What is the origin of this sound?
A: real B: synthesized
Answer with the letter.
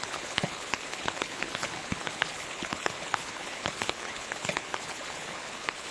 B